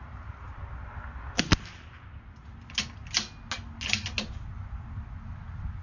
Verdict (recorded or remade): recorded